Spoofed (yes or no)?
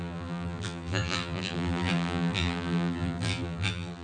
yes